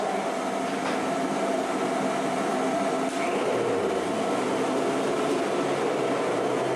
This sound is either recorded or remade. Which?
recorded